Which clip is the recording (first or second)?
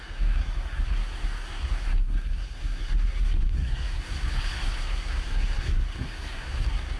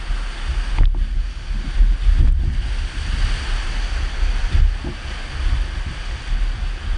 second